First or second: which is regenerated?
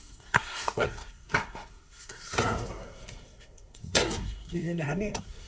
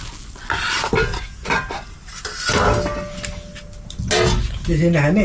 first